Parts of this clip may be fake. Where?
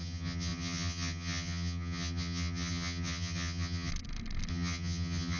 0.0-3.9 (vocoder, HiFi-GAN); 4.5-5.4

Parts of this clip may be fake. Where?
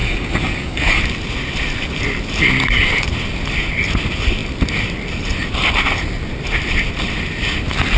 0.0-1.0 (codec, DAC)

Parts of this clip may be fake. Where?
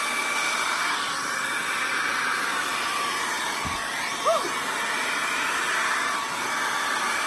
none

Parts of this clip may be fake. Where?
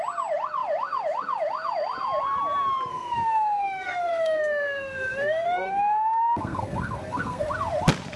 2.9-7.5 (codec, SNAC)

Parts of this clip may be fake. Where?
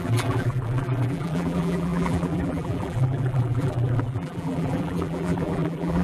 0.0-6.0 (vocoder, BigVGAN v2)